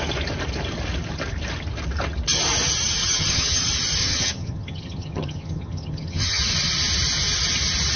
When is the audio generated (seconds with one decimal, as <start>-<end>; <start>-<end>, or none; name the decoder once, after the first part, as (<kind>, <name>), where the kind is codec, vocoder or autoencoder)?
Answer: 3.0-3.6 (vocoder, HiFi-GAN); 4.0-6.4